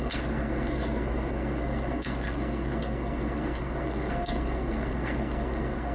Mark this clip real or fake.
fake